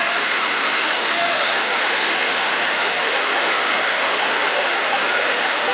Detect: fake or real fake